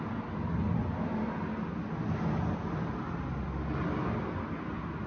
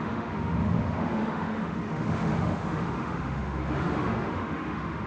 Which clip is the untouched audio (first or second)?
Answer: first